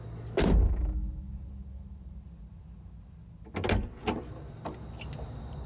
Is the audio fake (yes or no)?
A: no